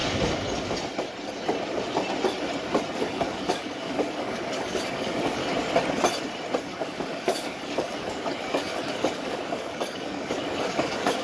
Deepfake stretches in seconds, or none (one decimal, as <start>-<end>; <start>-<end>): 3.0-5.4; 6.6-11.2